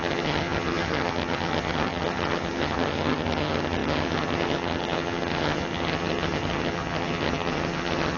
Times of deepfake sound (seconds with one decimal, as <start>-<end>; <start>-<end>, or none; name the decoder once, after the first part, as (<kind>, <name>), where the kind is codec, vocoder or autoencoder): 0.0-8.2 (vocoder, HiFi-GAN)